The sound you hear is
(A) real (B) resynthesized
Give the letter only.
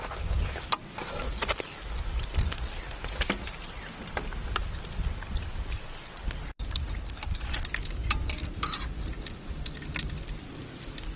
A